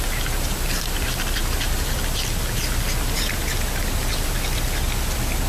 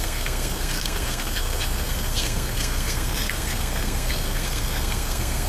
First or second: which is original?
first